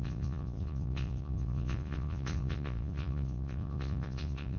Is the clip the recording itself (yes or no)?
no